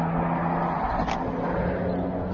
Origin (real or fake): real